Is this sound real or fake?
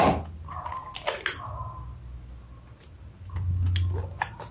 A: real